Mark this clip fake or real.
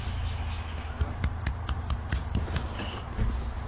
real